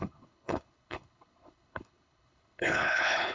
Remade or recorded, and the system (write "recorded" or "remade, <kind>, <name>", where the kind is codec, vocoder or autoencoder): remade, codec, HILCodec